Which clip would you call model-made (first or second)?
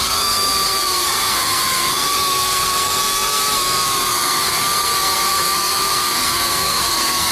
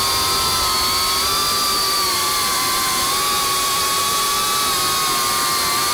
first